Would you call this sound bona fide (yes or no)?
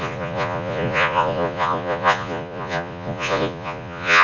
no